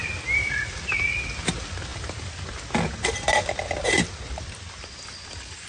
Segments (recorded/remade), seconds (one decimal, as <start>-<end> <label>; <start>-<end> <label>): 0.0-5.7 recorded